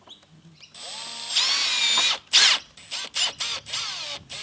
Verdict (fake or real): real